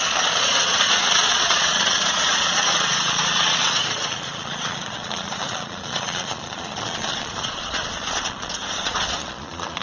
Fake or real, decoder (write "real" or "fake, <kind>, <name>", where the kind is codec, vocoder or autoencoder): fake, vocoder, Vocos